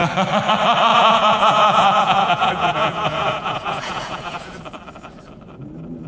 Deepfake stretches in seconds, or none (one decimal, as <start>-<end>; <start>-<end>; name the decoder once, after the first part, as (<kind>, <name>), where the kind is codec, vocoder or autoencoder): 0.9-4.6 (vocoder, Vocos)